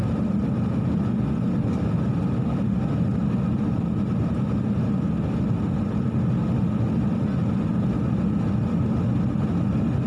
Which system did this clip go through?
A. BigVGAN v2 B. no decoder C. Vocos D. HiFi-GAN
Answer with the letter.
B